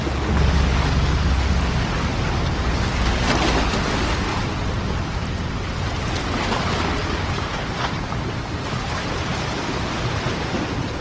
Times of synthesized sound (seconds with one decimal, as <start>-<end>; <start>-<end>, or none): 7.0-8.4; 8.8-10.4